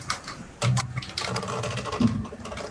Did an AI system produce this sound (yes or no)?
no